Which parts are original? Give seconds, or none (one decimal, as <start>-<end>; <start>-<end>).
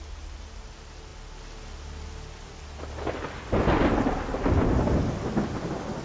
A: 0.0-6.0